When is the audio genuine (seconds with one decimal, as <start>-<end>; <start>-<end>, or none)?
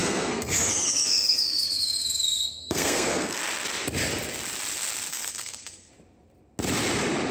3.4-5.1; 5.9-7.3